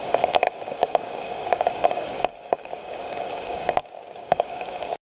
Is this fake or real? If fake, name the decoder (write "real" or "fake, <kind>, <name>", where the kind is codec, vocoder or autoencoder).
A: fake, codec, DAC